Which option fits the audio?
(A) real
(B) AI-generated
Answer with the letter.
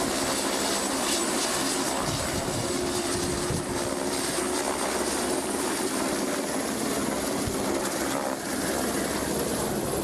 A